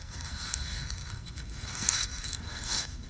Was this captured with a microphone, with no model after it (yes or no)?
no